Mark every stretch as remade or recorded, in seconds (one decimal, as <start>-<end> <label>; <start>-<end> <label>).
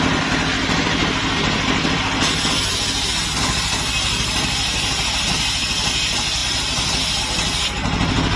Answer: 0.0-8.4 recorded